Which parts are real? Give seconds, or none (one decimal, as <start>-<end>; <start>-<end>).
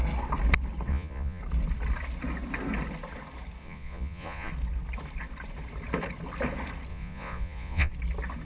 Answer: 0.0-0.9; 1.4-3.6; 4.5-6.9; 7.9-8.4